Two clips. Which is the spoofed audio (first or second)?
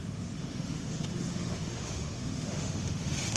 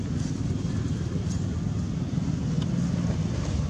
first